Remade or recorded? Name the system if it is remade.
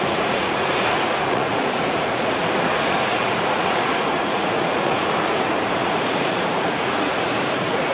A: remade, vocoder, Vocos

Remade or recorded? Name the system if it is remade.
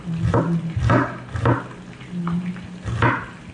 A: recorded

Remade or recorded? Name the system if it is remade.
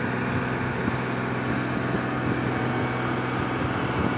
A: recorded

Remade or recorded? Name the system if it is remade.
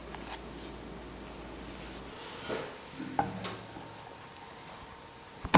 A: recorded